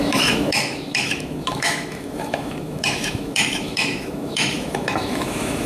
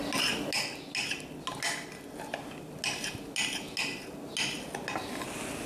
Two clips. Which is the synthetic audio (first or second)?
first